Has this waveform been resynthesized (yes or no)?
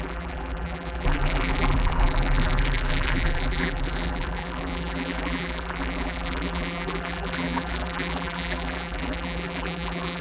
yes